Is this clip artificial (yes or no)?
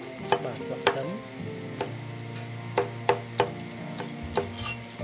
no